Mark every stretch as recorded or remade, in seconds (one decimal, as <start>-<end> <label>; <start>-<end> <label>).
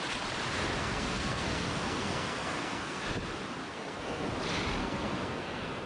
0.0-0.8 recorded; 0.8-3.0 remade; 3.0-3.6 recorded; 3.6-4.3 remade; 4.3-4.8 recorded; 4.8-5.9 remade